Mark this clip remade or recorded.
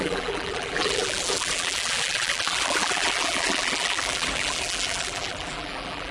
remade